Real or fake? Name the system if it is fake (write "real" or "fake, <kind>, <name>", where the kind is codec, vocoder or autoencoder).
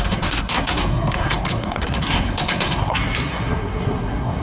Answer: fake, codec, SNAC